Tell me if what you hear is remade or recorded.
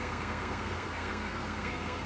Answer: remade